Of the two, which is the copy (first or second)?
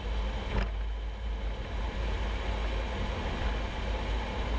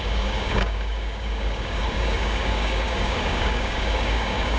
second